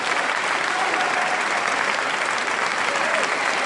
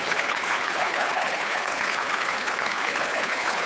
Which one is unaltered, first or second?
first